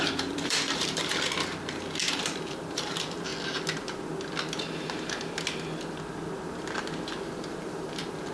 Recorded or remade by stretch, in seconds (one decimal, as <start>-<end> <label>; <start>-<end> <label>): 0.0-1.1 remade; 1.1-2.0 recorded; 2.0-3.3 remade; 3.3-7.5 recorded; 7.5-8.3 remade